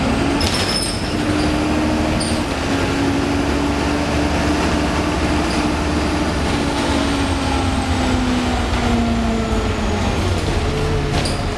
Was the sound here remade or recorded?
recorded